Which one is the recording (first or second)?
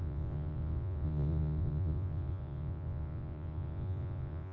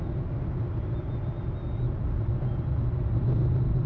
second